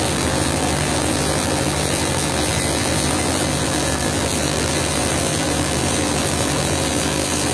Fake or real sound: fake